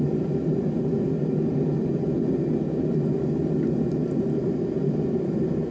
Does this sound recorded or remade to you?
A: recorded